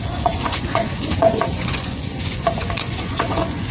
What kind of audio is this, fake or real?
fake